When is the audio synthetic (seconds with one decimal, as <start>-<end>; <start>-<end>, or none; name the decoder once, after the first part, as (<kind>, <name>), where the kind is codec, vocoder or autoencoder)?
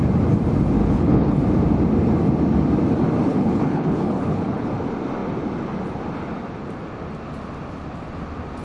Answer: 0.8-1.4 (codec, HILCodec); 3.3-4.7